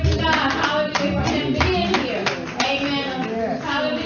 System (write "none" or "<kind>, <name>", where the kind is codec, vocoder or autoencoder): none